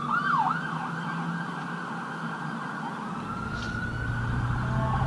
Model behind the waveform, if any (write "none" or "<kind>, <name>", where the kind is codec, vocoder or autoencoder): none